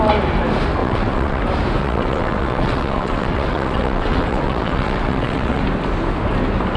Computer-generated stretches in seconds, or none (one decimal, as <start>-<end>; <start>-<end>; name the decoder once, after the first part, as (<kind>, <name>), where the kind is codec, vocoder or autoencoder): 0.8-1.4 (vocoder, WaveNeXt); 1.8-5.6